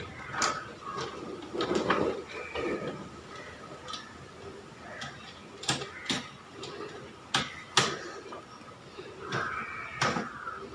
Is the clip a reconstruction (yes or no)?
no